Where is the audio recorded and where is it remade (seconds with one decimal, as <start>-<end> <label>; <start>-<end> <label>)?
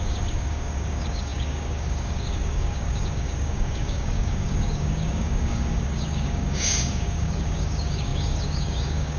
0.0-9.2 remade